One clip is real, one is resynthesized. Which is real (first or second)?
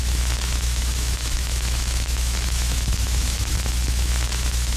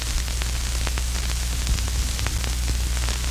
second